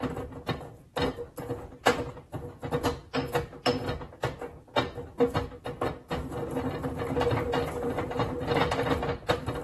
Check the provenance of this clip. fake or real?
real